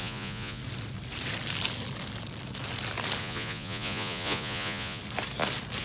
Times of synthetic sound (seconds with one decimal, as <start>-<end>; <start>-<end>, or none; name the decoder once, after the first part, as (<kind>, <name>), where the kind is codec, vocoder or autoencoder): 0.0-0.6 (vocoder, Vocos); 3.2-5.0